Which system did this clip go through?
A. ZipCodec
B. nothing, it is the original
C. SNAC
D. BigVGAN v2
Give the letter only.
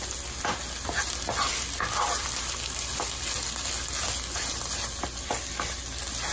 B